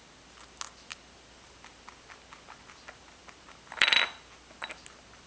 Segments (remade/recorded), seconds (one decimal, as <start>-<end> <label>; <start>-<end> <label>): 0.0-5.3 recorded